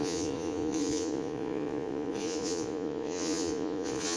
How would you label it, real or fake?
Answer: fake